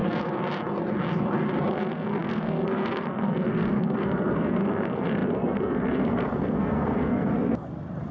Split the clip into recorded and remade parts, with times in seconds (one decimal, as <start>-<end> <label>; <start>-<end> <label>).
0.0-1.7 recorded; 1.7-7.3 remade; 7.3-8.1 recorded